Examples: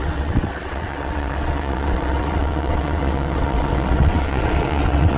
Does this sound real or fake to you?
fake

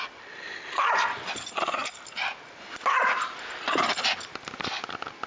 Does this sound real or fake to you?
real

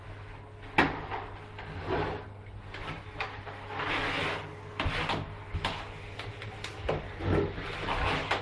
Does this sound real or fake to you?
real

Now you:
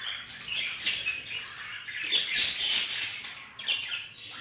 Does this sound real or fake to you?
real